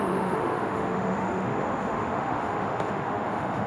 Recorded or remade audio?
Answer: remade